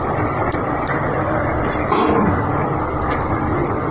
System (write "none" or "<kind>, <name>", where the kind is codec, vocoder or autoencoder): vocoder, BigVGAN v2